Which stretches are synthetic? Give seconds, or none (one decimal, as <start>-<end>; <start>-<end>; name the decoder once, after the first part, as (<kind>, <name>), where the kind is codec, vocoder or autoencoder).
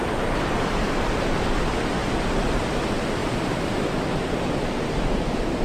0.0-2.0 (vocoder, BigVGAN v2); 2.7-3.2